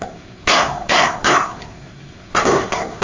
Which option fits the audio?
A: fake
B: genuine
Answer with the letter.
A